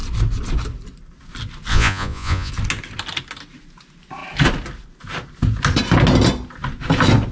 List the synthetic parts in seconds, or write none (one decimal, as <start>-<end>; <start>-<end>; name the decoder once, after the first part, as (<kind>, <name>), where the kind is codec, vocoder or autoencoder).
1.7-2.5 (vocoder, Vocos)